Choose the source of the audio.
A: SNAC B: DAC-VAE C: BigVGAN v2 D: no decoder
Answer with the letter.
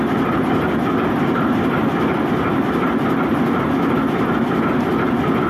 D